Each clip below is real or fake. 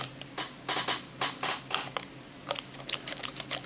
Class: real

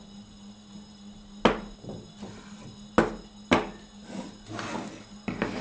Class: real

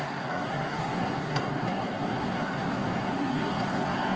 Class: fake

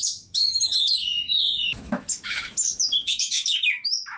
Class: fake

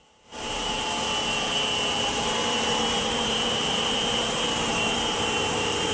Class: fake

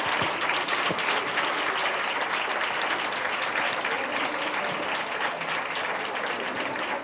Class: real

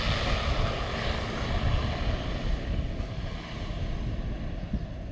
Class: real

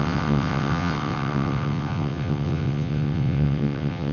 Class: fake